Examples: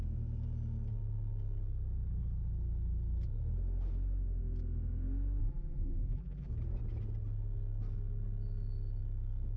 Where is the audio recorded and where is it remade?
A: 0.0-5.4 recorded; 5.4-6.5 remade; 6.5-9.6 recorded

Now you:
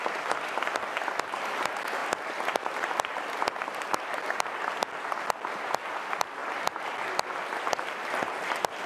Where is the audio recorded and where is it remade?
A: 0.0-8.9 recorded

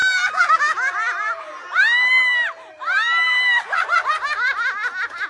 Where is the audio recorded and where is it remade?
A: 0.0-5.3 recorded

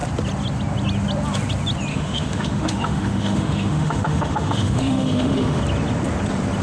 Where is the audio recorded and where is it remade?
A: 0.0-1.9 recorded; 1.9-5.6 remade; 5.6-6.6 recorded